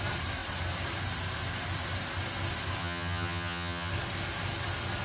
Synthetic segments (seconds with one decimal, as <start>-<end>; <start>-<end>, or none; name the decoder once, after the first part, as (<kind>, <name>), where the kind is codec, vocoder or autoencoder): 2.8-3.9 (vocoder, HiFi-GAN)